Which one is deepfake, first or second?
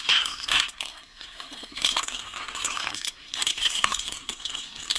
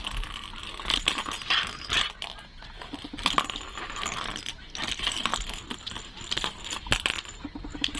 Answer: first